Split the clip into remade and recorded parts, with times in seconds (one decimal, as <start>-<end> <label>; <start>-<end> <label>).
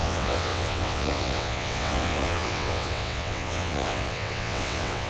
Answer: 0.0-5.1 remade